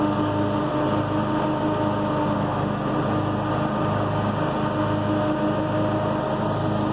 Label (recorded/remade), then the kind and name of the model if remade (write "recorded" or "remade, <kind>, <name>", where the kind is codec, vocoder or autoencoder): recorded